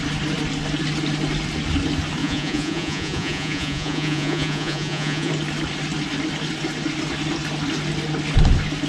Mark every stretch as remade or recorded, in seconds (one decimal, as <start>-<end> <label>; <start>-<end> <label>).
0.0-2.2 recorded; 2.2-5.3 remade; 5.3-8.9 recorded